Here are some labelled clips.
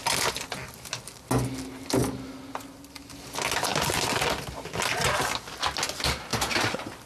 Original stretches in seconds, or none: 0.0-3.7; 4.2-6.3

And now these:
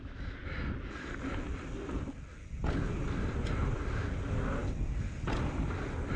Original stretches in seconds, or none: 0.0-6.2

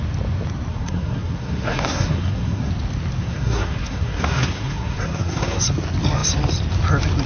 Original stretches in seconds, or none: 0.0-0.7; 2.7-3.2; 5.6-7.3

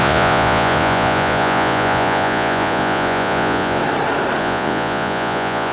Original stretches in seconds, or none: 3.8-4.4

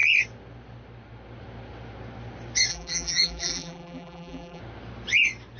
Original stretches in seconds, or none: 0.0-2.7; 4.6-5.6

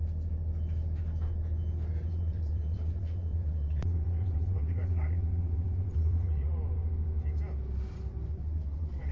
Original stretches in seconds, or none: 0.0-2.1; 6.6-8.3